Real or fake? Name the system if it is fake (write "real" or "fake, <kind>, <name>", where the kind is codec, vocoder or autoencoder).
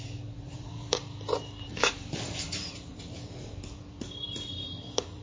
fake, vocoder, BigVGAN v2